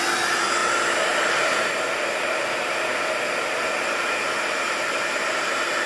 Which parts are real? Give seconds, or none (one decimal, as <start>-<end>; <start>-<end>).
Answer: 0.0-0.6; 1.2-5.9